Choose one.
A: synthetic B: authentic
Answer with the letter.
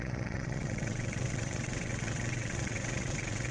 A